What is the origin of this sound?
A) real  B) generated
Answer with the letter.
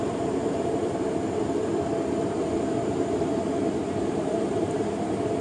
B